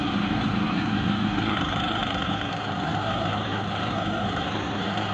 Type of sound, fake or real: fake